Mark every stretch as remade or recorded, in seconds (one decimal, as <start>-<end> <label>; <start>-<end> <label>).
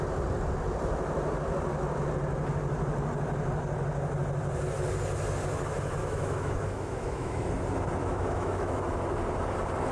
0.0-6.0 recorded; 6.0-7.5 remade; 7.5-8.0 recorded; 8.0-8.8 remade; 8.8-9.9 recorded